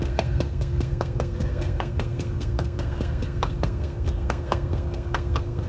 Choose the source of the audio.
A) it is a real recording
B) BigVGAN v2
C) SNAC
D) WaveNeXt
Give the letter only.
C